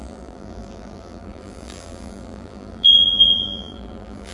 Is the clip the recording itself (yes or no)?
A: no